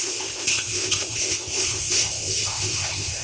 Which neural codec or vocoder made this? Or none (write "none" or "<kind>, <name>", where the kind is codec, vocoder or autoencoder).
codec, ZipCodec